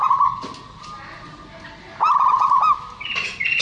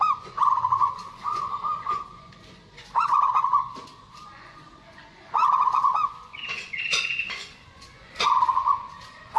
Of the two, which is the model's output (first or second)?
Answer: second